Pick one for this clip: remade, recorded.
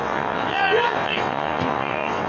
remade